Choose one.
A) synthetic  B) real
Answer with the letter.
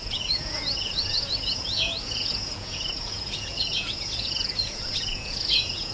A